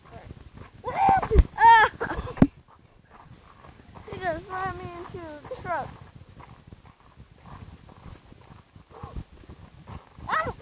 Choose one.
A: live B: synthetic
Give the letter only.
A